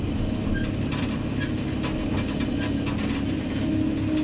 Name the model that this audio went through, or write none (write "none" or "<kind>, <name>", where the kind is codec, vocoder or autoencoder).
none